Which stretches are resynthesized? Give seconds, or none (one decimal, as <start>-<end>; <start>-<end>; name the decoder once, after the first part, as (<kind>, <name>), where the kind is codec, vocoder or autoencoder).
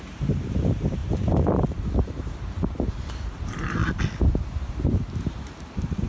0.0-3.8 (vocoder, BigVGAN v2); 4.6-6.1